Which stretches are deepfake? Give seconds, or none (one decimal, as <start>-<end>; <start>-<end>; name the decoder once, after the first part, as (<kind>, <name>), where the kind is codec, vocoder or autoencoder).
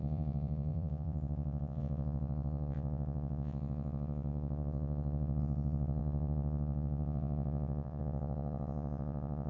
0.0-9.5 (vocoder, Vocos)